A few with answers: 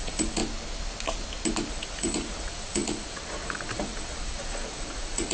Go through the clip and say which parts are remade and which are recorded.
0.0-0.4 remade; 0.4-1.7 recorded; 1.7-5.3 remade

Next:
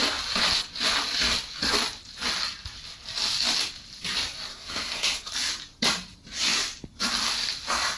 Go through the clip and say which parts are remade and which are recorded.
0.0-4.5 recorded; 4.5-5.3 remade; 5.3-8.0 recorded

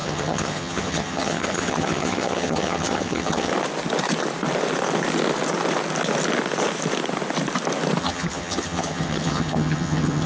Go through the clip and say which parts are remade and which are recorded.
0.0-3.5 remade; 3.5-8.0 recorded; 8.0-10.3 remade

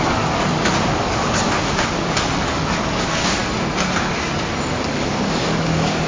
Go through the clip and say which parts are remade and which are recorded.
0.0-3.4 remade; 3.4-4.7 recorded; 4.7-6.1 remade

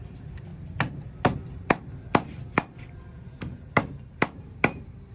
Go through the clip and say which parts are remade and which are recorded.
0.0-0.5 remade; 0.5-3.6 recorded; 3.6-5.1 remade